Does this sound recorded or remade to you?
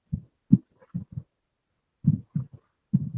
recorded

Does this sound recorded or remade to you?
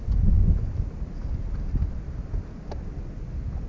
recorded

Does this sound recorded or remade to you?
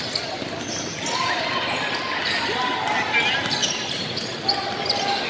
recorded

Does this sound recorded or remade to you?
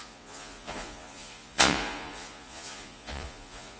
remade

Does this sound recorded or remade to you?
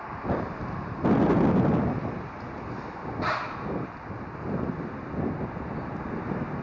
recorded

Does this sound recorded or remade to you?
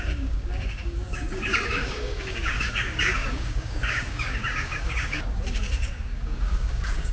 remade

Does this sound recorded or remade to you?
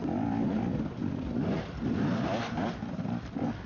remade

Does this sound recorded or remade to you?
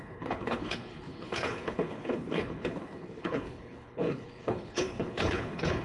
remade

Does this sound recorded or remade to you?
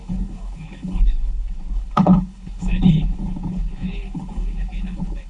remade